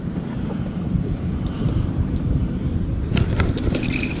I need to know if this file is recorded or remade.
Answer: remade